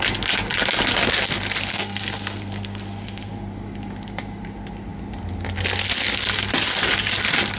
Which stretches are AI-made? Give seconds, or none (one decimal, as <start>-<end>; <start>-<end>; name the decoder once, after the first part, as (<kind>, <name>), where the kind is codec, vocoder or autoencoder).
1.7-3.3 (codec, SNAC)